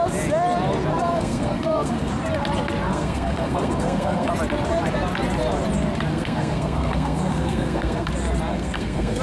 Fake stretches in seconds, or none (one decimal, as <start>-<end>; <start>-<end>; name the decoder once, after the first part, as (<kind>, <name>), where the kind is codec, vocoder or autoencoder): 0.9-2.1 (codec, SNAC); 2.9-4.3; 6.1-8.1; 8.5-9.2